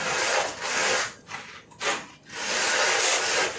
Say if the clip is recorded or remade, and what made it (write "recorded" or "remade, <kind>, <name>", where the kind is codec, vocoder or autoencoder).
recorded